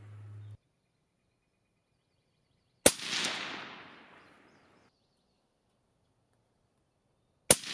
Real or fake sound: real